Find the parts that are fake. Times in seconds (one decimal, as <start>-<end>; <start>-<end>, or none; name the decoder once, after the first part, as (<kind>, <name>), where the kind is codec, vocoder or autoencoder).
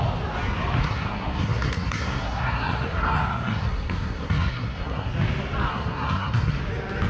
0.8-5.1 (codec, SNAC); 5.7-6.6